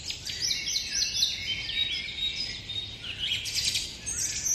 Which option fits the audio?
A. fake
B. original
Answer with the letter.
B